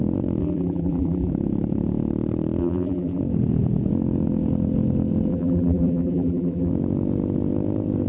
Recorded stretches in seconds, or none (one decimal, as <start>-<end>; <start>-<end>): 0.0-0.4; 1.3-2.6; 3.2-5.3; 6.7-8.1